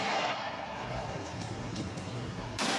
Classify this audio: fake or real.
fake